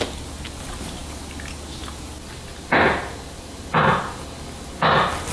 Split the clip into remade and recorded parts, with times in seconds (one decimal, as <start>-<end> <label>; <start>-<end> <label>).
0.0-5.3 recorded